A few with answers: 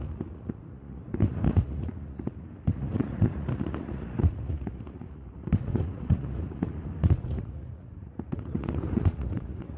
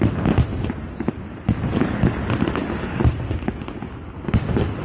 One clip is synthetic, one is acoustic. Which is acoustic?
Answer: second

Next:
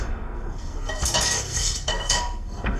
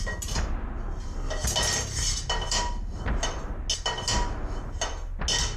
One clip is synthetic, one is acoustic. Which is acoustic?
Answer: second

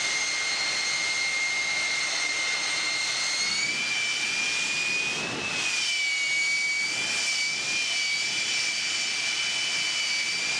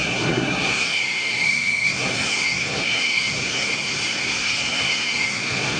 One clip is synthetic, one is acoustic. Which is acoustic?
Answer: first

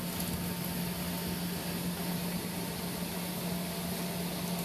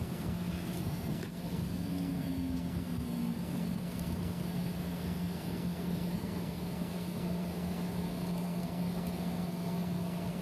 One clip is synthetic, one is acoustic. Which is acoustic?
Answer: first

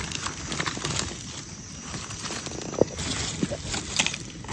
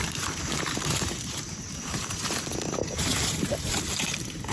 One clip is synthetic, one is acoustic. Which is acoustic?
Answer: first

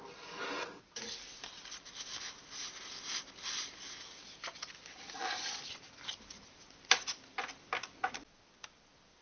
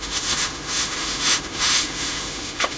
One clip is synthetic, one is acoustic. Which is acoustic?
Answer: first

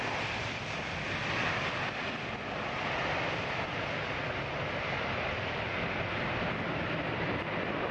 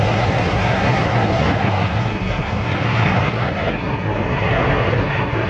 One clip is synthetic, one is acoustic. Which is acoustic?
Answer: first